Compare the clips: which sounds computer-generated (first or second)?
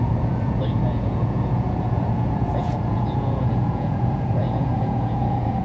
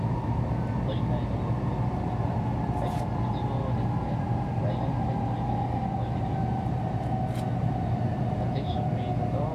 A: first